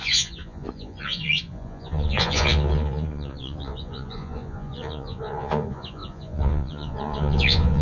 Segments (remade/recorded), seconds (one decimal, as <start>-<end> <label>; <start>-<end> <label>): 0.0-7.8 remade